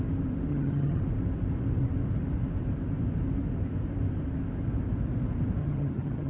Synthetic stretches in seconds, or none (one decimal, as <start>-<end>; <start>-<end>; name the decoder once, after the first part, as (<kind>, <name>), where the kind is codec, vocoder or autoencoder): 0.5-1.0 (vocoder, HiFi-GAN); 5.6-6.3